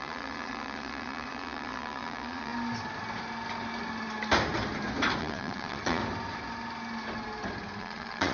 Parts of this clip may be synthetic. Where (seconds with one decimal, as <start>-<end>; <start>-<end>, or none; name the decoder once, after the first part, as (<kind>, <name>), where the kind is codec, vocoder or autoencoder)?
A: 0.0-2.5 (vocoder, Vocos); 5.2-6.0; 7.8-8.3